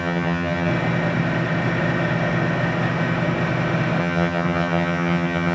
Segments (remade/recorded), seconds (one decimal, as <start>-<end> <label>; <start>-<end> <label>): 0.0-0.7 remade; 0.7-4.0 recorded; 4.0-5.5 remade